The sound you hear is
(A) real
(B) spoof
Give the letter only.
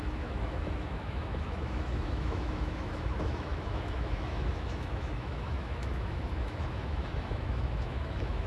B